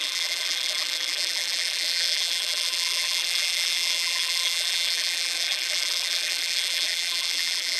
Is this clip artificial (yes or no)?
yes